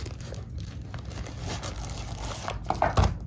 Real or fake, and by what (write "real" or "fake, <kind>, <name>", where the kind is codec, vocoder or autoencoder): real